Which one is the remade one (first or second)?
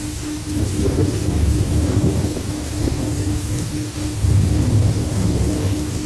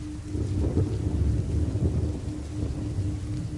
first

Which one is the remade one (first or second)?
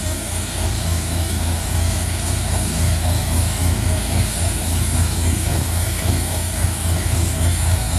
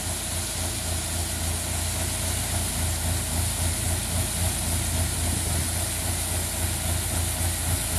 first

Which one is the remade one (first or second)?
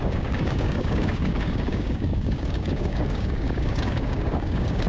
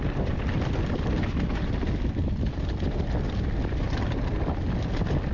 first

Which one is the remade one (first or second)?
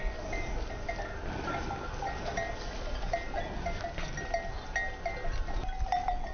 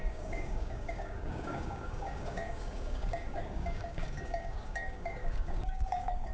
second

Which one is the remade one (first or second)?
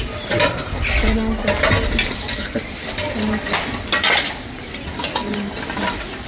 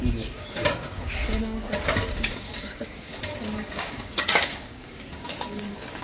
second